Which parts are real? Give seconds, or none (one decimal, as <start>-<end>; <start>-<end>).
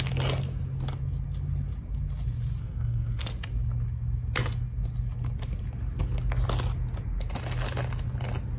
0.0-2.6; 3.2-8.6